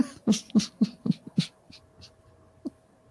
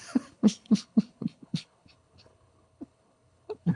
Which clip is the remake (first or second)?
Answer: second